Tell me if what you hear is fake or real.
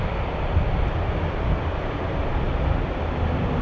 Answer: real